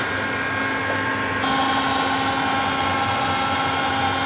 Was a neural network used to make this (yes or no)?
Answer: no